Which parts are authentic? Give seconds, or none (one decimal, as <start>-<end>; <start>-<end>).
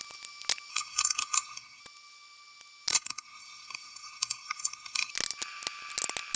0.0-0.7; 1.8-2.9; 5.1-6.4